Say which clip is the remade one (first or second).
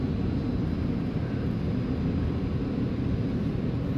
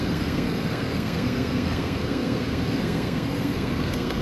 second